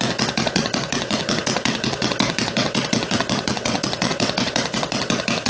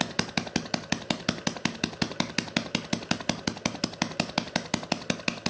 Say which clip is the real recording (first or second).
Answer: second